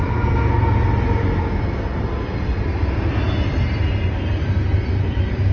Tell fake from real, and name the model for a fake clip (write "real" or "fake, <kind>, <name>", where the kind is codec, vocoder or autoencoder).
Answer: real